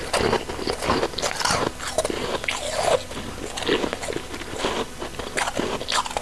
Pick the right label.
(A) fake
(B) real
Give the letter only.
B